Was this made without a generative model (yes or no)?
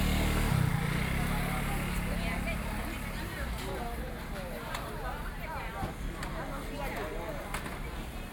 yes